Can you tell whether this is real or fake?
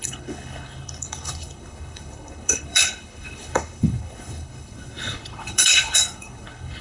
fake